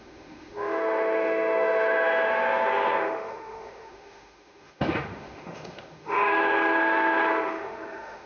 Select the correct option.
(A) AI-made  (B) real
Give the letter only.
A